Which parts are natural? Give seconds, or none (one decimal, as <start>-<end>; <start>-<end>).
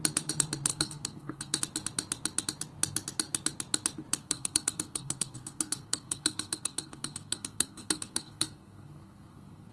0.0-0.7; 1.6-4.2